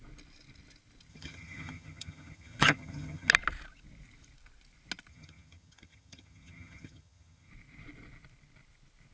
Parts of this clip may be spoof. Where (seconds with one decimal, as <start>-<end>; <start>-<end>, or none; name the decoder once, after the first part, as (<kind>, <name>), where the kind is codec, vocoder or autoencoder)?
1.1-3.3 (vocoder, HiFi-GAN); 5.1-7.5